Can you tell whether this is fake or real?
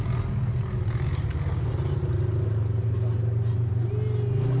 real